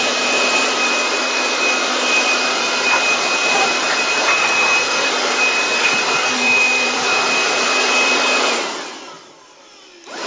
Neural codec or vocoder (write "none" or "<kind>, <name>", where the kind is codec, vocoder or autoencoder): vocoder, BigVGAN v2